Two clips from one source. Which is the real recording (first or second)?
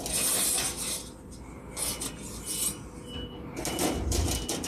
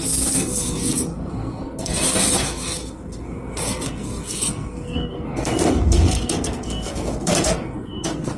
first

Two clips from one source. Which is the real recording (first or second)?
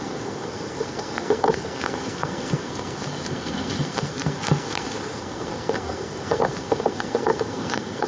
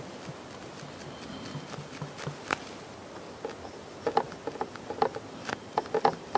second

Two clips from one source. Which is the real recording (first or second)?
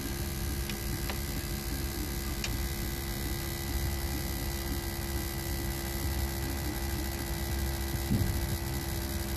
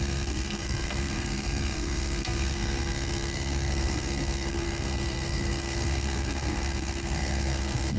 first